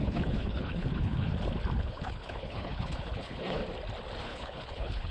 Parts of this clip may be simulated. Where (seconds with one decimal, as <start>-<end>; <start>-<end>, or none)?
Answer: 0.0-1.3; 1.8-3.6; 4.2-5.1